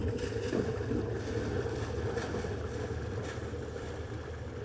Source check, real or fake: real